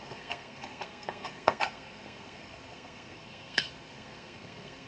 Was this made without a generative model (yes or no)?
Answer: no